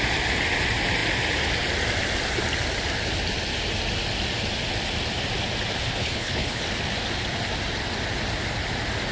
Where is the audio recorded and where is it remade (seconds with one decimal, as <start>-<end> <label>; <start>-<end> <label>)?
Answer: 0.0-6.0 recorded; 6.0-6.6 remade; 6.6-9.1 recorded